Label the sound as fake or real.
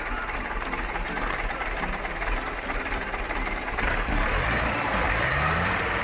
fake